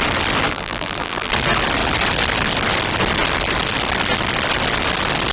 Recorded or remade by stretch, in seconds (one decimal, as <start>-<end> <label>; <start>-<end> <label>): 0.0-0.5 recorded; 0.5-1.3 remade; 1.3-5.3 recorded